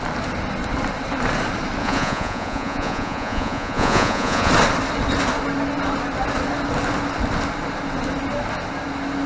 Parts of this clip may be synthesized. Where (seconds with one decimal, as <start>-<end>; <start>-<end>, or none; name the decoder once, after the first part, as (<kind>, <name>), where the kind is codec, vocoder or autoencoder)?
1.8-4.5 (vocoder, Vocos)